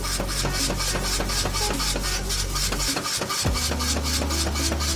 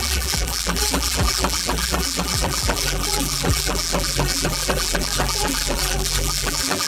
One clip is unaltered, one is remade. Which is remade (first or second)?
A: second